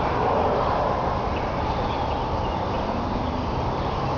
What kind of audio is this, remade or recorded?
recorded